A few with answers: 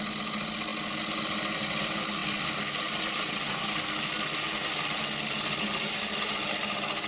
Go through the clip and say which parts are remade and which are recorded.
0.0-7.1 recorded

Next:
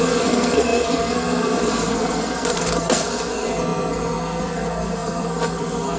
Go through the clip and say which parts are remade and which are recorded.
0.0-6.0 remade

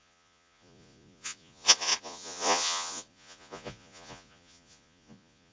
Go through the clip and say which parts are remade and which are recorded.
0.0-5.5 remade

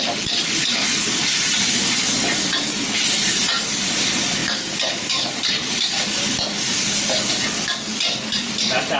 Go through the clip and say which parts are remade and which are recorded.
0.0-9.0 recorded

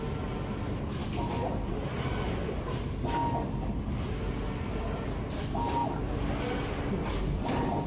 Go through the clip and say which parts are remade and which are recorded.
0.0-7.9 recorded